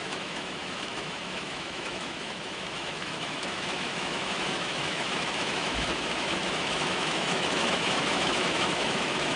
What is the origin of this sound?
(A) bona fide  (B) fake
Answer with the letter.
B